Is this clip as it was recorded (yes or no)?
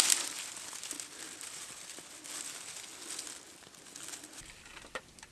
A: yes